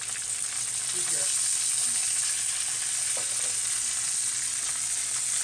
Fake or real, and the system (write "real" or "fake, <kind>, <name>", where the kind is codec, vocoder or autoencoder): real